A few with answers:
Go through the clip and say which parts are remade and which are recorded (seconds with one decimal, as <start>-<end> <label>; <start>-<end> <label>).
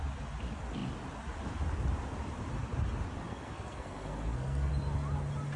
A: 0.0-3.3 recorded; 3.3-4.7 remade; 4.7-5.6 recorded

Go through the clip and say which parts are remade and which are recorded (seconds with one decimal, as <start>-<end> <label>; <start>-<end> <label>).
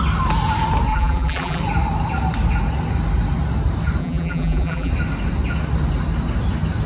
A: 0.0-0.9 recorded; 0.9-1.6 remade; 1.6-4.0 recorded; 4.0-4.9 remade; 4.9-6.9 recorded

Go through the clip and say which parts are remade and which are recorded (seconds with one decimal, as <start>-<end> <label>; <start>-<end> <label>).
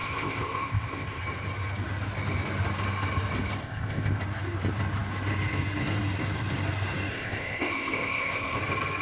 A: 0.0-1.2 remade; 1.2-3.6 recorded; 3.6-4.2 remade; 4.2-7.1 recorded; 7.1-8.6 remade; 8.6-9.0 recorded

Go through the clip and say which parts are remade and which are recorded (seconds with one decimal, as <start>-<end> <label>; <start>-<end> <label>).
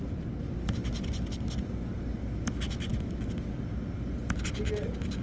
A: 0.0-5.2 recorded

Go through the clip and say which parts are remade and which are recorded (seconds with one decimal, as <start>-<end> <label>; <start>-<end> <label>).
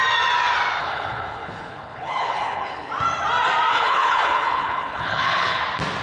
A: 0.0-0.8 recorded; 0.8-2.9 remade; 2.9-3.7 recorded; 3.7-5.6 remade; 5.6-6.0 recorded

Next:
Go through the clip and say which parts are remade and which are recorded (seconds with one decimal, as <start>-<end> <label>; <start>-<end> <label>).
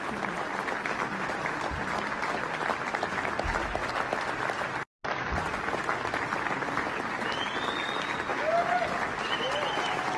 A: 0.0-10.2 recorded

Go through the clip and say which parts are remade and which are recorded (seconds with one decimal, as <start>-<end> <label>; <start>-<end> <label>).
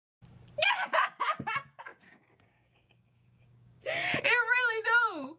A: 0.0-0.9 recorded; 0.9-5.4 remade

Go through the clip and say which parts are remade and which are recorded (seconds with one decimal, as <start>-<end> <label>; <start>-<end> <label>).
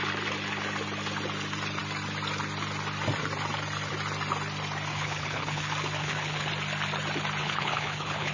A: 0.0-4.9 recorded; 4.9-5.6 remade; 5.6-6.0 recorded; 6.0-6.5 remade; 6.5-7.4 recorded; 7.4-8.3 remade